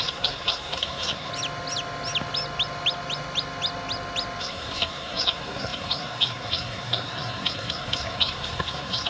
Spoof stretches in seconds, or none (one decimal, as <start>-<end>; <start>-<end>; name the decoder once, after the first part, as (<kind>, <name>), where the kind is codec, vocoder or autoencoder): 0.0-1.3 (codec, SNAC); 4.4-9.1